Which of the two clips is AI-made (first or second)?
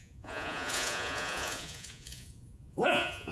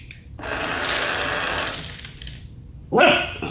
first